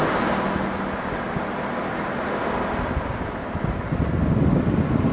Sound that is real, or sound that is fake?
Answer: real